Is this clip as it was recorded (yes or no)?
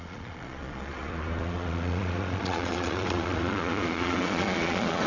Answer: no